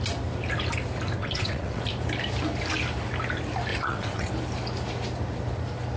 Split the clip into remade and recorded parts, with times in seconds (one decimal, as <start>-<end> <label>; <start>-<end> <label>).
0.0-1.2 recorded; 1.2-1.8 remade; 1.8-3.7 recorded; 3.7-4.3 remade; 4.3-6.0 recorded